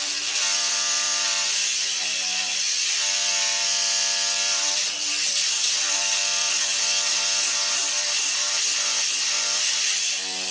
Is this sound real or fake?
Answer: fake